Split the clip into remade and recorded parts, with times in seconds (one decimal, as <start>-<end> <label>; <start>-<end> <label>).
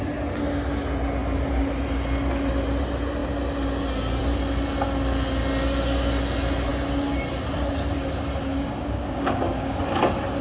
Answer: 0.0-8.5 recorded; 8.5-9.8 remade; 9.8-10.4 recorded